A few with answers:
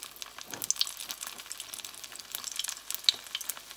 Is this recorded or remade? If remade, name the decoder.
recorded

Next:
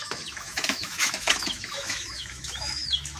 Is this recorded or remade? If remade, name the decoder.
remade, autoencoder, DAC-VAE